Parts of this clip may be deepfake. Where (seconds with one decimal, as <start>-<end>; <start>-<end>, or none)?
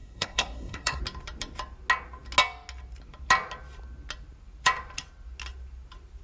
0.0-1.0